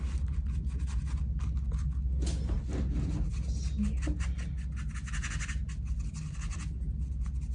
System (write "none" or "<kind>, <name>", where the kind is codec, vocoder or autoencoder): none